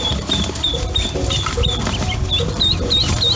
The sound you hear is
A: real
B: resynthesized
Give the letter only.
A